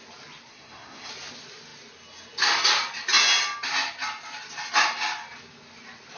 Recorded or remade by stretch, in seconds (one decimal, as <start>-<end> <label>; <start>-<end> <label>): 0.0-0.5 recorded; 0.5-1.1 remade; 1.1-6.2 recorded

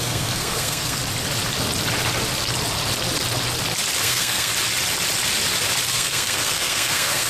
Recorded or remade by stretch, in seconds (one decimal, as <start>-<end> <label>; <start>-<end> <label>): 0.0-1.0 remade; 1.0-4.0 recorded; 4.0-4.5 remade; 4.5-5.9 recorded; 5.9-7.3 remade

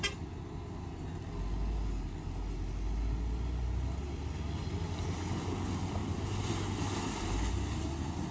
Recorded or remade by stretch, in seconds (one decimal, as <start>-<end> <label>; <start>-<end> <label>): 0.0-8.3 recorded

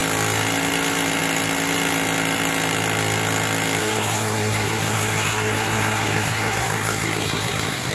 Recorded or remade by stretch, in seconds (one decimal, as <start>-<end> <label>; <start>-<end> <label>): 0.0-3.8 recorded; 3.8-7.9 remade